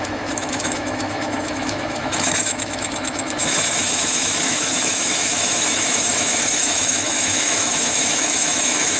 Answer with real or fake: fake